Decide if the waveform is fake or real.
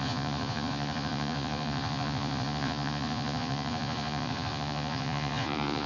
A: fake